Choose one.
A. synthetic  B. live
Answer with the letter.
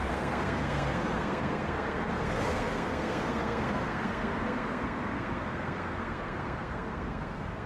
A